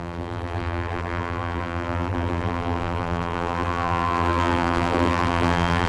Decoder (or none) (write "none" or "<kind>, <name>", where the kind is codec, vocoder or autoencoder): vocoder, BigVGAN v2